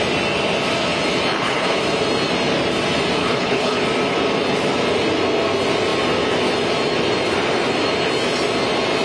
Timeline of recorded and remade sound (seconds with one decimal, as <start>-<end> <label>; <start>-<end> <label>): 0.0-1.3 recorded; 1.3-1.8 remade; 1.8-3.2 recorded; 3.2-3.8 remade; 3.8-9.0 recorded